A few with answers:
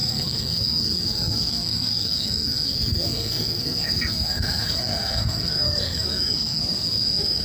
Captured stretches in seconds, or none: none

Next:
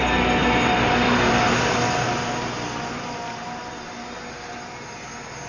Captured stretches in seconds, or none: 0.0-5.5

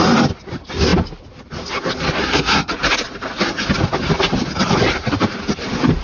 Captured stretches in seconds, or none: 0.0-2.2; 2.7-6.0

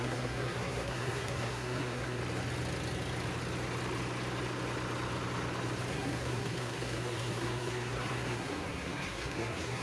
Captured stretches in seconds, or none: 2.2-5.9

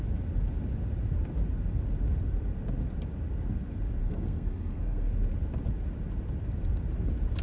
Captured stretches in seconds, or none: 0.0-4.0; 5.1-7.4

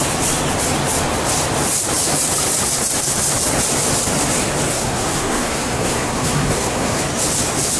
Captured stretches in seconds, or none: 0.0-4.7; 7.0-7.8

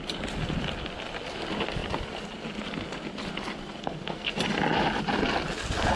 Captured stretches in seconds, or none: 0.0-3.8; 4.3-6.0

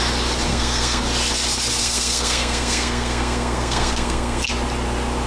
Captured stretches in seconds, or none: 0.0-0.5; 1.0-1.8; 4.5-5.3